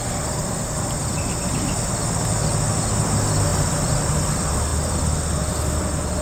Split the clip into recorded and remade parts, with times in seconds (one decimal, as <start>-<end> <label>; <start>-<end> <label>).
0.0-6.2 recorded